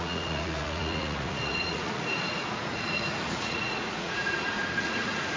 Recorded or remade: remade